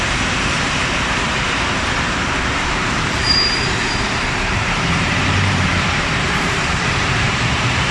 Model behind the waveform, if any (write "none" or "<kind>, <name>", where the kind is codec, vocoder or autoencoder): vocoder, BigVGAN v2